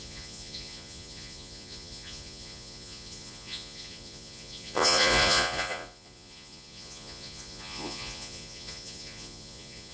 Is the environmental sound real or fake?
fake